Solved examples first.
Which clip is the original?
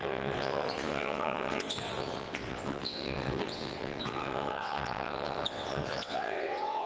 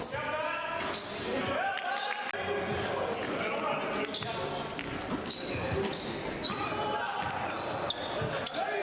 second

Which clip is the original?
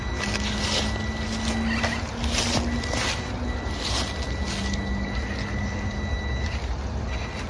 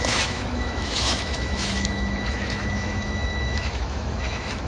first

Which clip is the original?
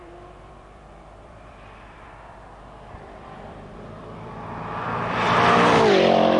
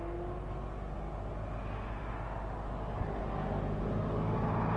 second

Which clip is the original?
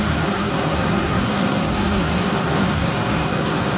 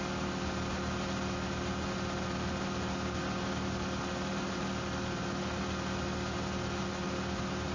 second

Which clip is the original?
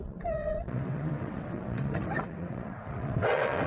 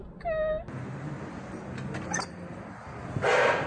second